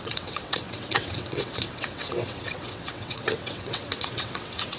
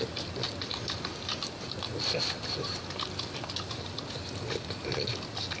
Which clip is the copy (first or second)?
first